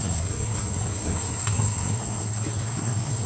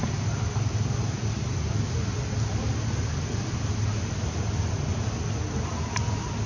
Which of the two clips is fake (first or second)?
first